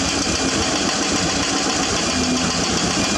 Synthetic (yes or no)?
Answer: no